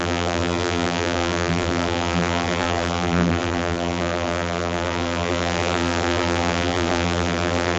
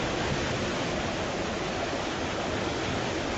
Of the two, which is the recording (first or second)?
second